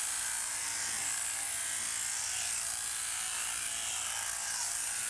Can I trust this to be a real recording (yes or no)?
yes